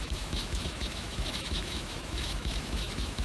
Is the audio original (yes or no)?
no